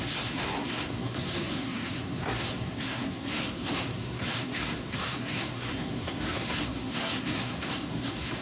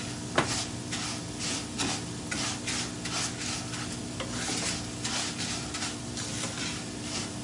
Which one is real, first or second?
second